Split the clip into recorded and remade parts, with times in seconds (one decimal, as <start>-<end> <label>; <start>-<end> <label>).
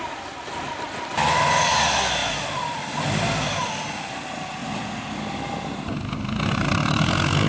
0.0-2.2 recorded; 2.2-3.9 remade; 3.9-4.6 recorded; 4.6-5.5 remade; 5.5-7.5 recorded